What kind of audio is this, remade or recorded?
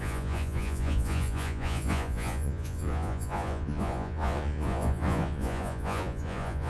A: remade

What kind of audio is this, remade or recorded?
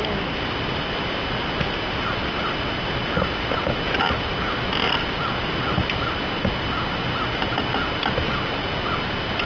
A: recorded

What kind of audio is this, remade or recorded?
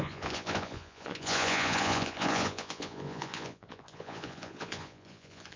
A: remade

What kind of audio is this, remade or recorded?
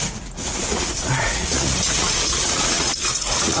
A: remade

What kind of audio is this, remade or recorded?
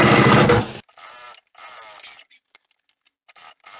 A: recorded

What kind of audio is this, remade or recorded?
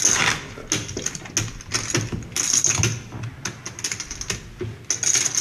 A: recorded